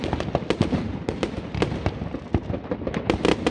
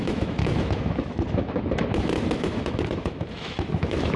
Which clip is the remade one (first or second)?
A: second